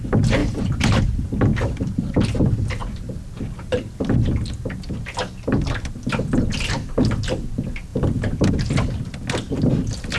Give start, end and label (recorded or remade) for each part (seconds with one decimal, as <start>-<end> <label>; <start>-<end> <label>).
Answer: 0.0-0.4 recorded; 0.4-1.0 remade; 1.0-1.5 recorded; 1.5-2.0 remade; 2.0-10.2 recorded